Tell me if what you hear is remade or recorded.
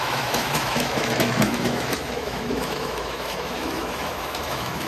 remade